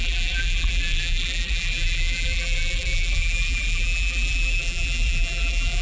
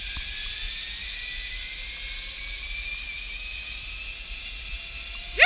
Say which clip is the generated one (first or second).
first